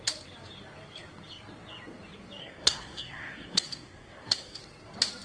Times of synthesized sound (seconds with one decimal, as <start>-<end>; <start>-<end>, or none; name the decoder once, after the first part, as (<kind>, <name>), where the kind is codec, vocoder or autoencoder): 2.4-4.6 (codec, SNAC)